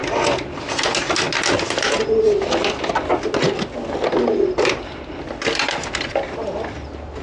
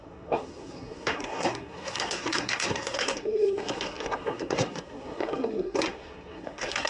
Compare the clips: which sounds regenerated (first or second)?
second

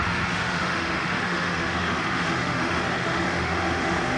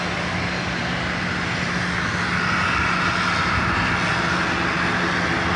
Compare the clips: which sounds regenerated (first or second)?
first